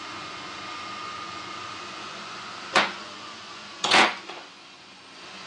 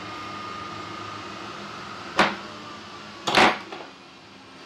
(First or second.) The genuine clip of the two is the second